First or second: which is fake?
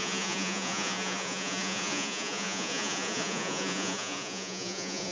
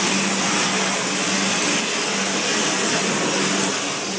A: first